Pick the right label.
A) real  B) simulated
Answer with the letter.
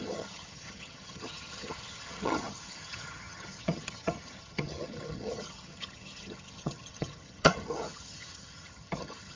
B